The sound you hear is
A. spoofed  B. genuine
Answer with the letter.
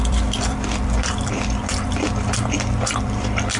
A